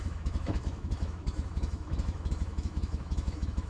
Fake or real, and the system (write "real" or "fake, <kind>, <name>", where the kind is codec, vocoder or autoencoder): fake, autoencoder, DAC-VAE